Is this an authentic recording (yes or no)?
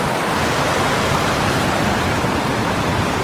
yes